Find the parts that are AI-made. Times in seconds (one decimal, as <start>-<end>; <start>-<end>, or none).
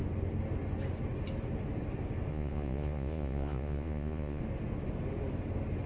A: 2.3-4.4